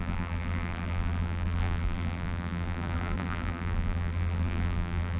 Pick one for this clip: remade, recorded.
remade